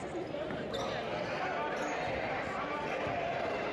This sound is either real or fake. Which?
real